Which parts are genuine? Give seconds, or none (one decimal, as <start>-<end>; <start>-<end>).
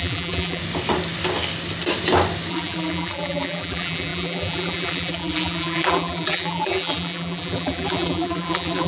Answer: 0.6-2.5